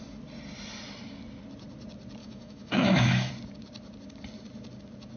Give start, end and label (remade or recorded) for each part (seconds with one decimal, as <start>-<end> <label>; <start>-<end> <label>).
0.0-2.2 recorded; 2.2-3.3 remade; 3.3-5.2 recorded